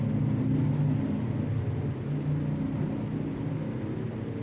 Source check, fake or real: real